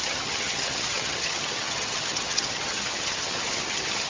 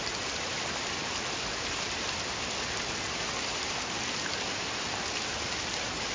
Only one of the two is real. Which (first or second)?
second